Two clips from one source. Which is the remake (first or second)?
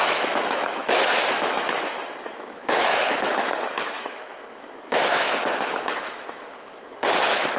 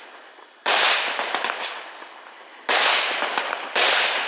first